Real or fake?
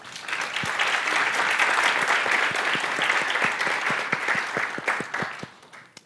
real